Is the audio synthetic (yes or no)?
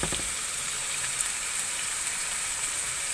yes